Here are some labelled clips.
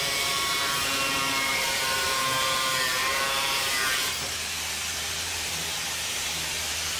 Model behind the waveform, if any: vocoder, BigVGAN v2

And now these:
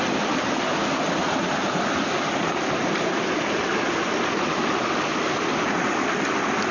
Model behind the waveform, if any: none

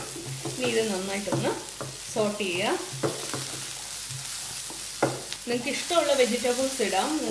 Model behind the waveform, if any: none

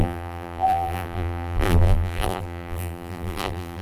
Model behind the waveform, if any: vocoder, BigVGAN v2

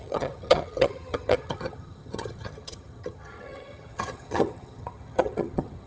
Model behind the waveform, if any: vocoder, HiFi-GAN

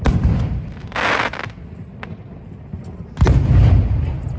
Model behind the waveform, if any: none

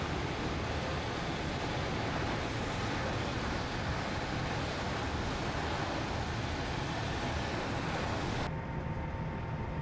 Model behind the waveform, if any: none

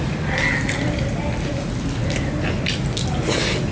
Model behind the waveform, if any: none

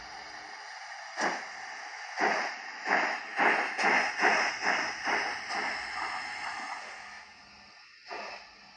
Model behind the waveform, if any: none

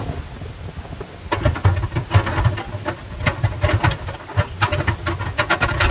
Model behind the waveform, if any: none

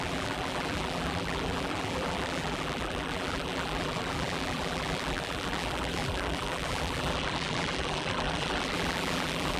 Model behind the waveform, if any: vocoder, BigVGAN v2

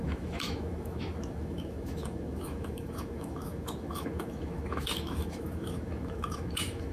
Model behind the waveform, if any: autoencoder, DAC-VAE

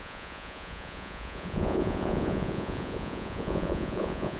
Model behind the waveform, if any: vocoder, Vocos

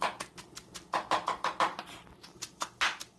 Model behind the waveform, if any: none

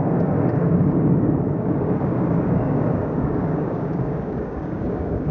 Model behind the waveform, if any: codec, DAC